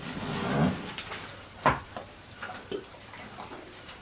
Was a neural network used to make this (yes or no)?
no